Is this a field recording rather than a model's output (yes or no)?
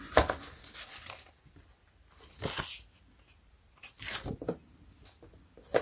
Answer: yes